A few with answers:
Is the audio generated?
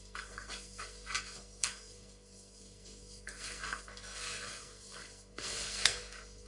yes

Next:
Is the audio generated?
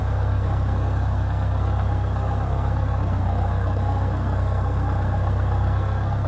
yes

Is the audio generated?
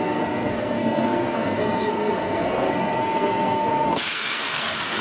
yes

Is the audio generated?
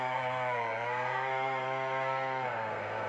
yes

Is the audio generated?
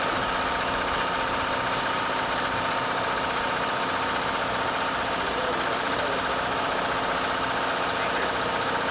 no